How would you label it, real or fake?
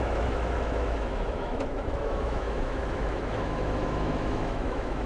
fake